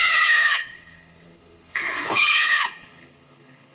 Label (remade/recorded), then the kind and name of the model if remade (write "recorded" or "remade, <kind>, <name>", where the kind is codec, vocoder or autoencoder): remade, codec, HILCodec